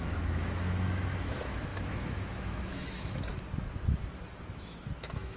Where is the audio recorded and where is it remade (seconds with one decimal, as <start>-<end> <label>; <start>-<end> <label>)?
0.0-3.3 remade; 3.3-4.5 recorded; 4.5-5.4 remade